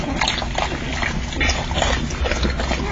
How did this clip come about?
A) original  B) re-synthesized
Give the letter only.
A